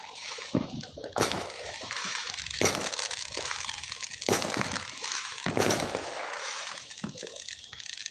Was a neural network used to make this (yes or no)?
yes